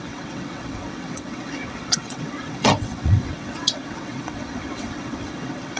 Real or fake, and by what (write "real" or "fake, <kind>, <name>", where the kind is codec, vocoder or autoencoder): fake, vocoder, WaveNeXt